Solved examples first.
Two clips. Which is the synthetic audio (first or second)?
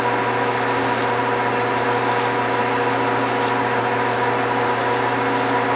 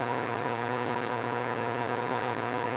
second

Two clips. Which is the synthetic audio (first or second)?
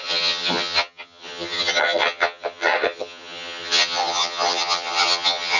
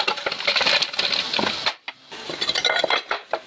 first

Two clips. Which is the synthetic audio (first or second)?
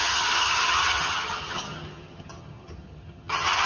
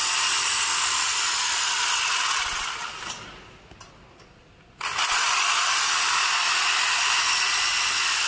first